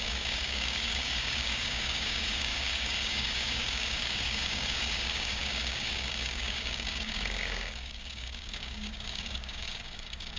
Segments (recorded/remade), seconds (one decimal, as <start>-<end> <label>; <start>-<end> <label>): 0.0-10.4 remade